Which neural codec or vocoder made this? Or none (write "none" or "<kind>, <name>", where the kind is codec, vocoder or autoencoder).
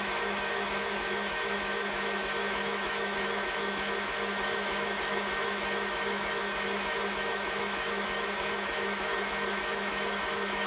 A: autoencoder, DAC-VAE